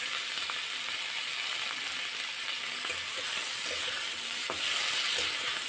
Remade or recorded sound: recorded